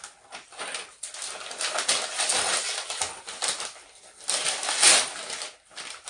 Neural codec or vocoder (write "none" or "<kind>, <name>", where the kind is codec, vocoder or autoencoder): none